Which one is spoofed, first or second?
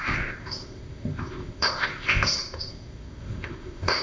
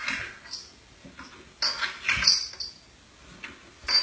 first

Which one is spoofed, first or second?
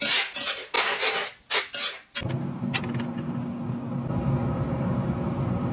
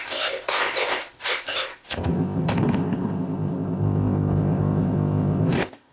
second